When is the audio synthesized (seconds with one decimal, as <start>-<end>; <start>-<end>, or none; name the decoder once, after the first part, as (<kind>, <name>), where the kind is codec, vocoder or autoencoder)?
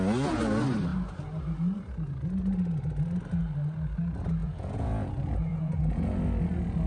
4.4-5.1 (vocoder, Vocos); 5.5-6.2